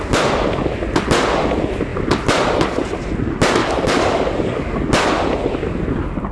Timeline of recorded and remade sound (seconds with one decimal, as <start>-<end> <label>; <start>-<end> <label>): 0.0-3.6 recorded; 3.6-4.9 remade; 4.9-6.3 recorded